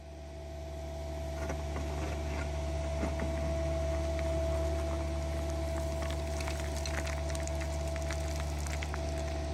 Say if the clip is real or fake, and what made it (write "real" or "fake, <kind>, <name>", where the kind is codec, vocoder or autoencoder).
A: real